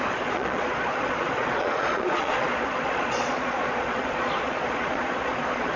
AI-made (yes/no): yes